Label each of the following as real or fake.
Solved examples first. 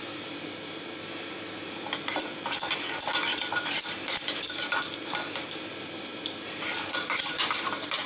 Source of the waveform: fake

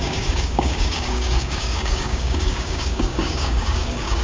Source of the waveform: fake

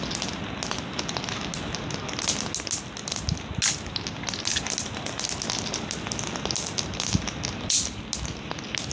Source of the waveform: real